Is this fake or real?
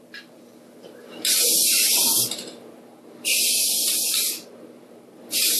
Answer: fake